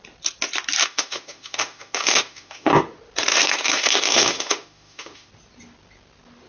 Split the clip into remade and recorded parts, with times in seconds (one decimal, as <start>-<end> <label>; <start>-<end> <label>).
0.0-0.8 recorded; 0.8-2.7 remade; 2.7-3.3 recorded; 3.3-5.3 remade; 5.3-6.5 recorded